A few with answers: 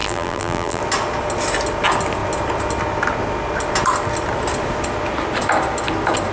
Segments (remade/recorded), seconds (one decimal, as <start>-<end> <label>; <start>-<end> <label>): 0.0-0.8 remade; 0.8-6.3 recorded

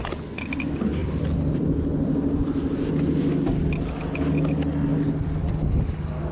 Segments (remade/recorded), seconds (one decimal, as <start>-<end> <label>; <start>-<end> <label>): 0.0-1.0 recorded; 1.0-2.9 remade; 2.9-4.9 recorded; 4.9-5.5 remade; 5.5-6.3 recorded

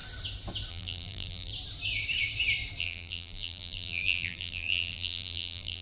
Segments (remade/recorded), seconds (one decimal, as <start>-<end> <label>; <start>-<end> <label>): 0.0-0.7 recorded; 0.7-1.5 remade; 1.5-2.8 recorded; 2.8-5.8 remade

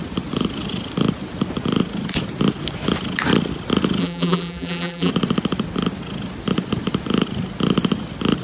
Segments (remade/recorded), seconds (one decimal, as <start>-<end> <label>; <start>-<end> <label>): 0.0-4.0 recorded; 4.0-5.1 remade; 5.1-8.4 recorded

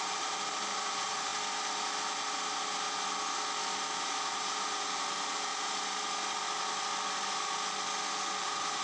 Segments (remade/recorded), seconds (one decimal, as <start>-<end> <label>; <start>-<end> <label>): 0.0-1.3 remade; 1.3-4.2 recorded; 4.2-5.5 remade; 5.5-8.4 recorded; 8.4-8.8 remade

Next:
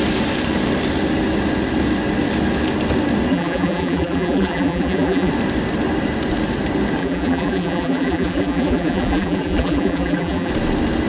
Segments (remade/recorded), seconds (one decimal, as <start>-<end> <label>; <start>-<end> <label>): 0.0-3.3 recorded; 3.3-5.3 remade; 5.3-7.0 recorded; 7.0-10.5 remade; 10.5-11.1 recorded

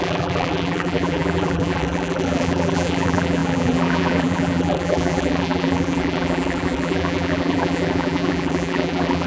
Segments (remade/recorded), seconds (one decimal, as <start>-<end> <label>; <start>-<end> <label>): 0.0-9.3 remade